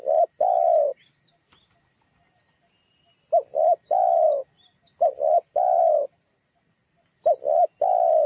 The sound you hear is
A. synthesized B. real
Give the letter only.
B